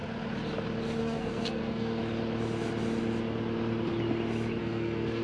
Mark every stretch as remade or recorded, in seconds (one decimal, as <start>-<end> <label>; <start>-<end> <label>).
0.0-1.0 recorded; 1.0-2.0 remade; 2.0-4.6 recorded; 4.6-5.2 remade